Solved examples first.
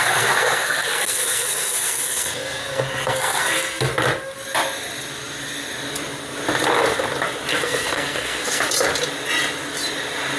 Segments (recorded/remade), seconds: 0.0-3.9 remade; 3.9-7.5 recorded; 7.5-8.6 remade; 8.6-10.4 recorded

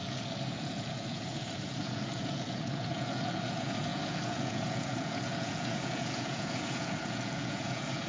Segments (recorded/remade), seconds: 0.0-8.1 remade

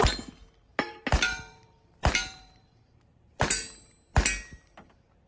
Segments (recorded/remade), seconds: 0.0-0.7 recorded; 0.7-3.9 remade; 3.9-5.3 recorded

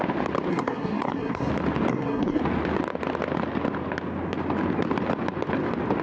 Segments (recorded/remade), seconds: 0.0-0.5 recorded; 0.5-1.5 remade; 1.5-1.9 recorded; 1.9-2.4 remade; 2.4-6.0 recorded